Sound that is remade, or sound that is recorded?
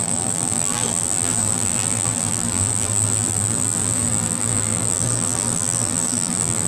remade